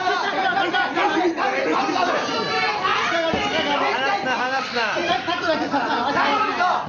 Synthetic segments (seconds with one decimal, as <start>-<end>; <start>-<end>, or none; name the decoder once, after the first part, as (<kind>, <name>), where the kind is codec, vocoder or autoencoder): 5.0-5.9 (vocoder, Vocos)